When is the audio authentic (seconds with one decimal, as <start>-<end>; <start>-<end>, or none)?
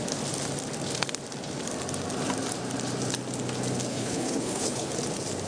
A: 0.0-3.9; 4.9-5.5